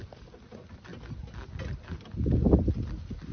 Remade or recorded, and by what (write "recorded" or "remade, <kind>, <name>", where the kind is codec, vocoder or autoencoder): recorded